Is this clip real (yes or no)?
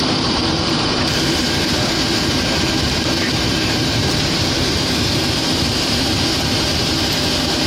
no